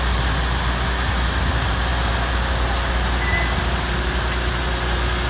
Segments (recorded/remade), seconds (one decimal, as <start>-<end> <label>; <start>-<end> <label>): 0.0-5.3 recorded